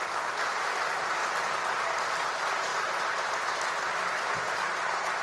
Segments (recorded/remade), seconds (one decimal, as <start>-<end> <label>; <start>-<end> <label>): 0.0-5.2 recorded